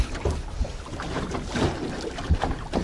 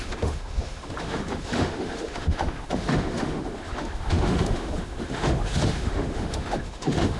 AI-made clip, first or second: second